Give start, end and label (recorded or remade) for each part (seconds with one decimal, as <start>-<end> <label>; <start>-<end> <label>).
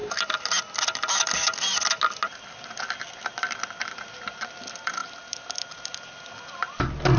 0.0-7.2 recorded